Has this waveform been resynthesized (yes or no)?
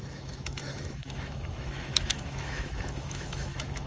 yes